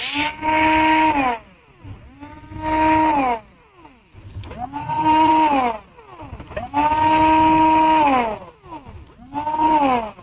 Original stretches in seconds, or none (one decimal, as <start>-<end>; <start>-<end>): 0.0-4.8; 5.3-10.2